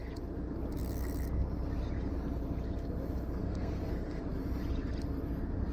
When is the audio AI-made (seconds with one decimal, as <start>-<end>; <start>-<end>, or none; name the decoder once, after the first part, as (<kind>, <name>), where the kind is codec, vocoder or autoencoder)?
3.4-4.2 (codec, SNAC)